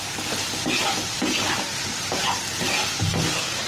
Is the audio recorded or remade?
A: recorded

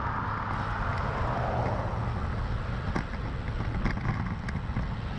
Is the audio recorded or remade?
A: recorded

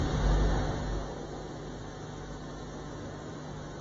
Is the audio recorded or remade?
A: recorded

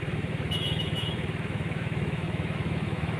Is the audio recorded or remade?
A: remade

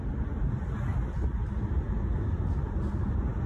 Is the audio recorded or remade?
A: recorded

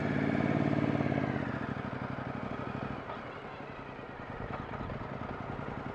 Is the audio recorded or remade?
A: recorded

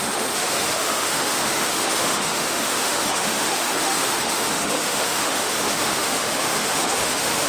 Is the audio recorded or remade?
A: remade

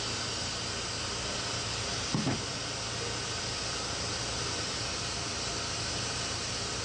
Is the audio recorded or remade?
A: recorded